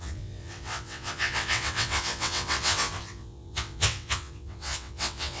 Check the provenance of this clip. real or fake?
fake